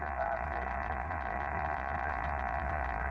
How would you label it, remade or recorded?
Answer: remade